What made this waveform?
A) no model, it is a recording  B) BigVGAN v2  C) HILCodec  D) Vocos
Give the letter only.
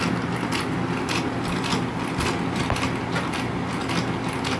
A